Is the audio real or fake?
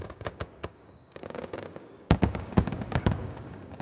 fake